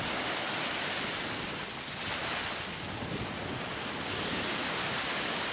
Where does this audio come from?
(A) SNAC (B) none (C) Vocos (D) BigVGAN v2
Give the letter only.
B